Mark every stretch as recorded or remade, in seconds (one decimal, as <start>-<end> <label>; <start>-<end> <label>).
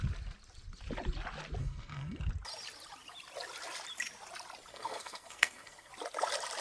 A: 0.0-1.6 recorded; 1.6-2.2 remade; 2.2-4.7 recorded; 4.7-5.9 remade; 5.9-6.6 recorded